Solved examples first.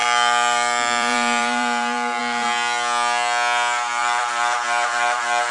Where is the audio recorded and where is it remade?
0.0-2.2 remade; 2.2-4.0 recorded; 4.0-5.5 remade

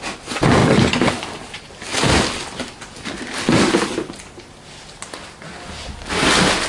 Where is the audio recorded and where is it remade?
0.0-1.9 recorded; 1.9-4.6 remade; 4.6-6.7 recorded

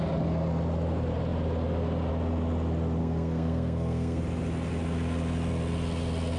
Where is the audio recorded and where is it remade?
0.0-3.0 recorded; 3.0-4.2 remade; 4.2-6.4 recorded